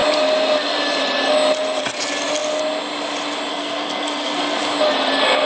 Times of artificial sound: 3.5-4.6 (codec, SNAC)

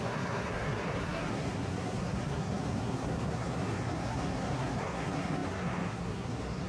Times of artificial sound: 0.0-6.7 (codec, SNAC)

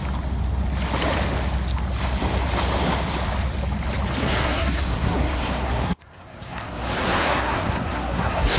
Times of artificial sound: 4.2-8.6 (codec, SNAC)

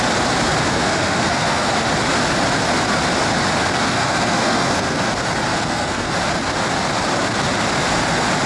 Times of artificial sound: 0.6-1.7 (codec, SNAC); 3.8-5.1; 5.5-6.1